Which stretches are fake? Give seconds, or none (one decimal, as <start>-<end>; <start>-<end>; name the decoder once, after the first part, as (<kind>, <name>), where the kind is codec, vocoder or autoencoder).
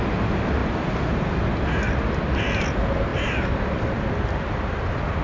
3.1-3.9 (vocoder, BigVGAN v2)